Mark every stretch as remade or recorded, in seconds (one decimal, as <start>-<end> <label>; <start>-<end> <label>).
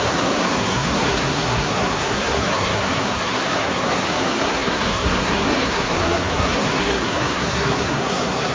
0.0-8.5 remade